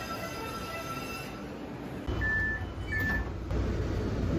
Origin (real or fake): real